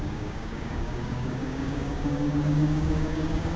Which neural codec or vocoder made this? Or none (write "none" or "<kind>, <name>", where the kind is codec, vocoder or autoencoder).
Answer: codec, DAC